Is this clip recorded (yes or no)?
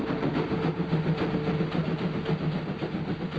yes